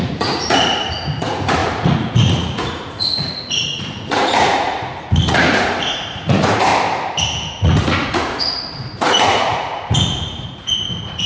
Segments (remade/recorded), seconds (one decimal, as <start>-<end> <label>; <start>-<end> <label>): 0.0-6.7 remade; 6.7-7.5 recorded; 7.5-11.3 remade